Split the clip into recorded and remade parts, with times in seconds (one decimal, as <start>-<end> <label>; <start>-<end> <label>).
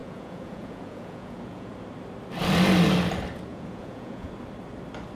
0.0-1.7 remade; 1.7-3.5 recorded; 3.5-4.3 remade; 4.3-5.2 recorded